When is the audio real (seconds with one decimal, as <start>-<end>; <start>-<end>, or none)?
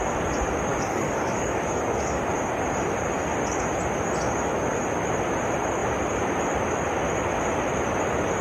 0.0-0.7; 2.2-8.4